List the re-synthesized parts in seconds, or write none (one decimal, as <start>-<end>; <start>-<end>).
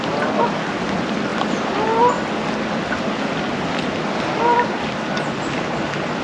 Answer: none